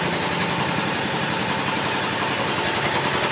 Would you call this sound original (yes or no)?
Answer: yes